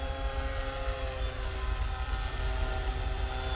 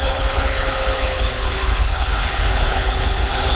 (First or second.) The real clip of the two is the first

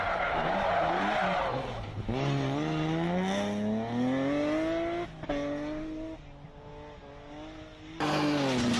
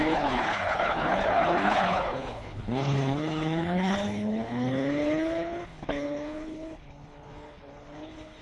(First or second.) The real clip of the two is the first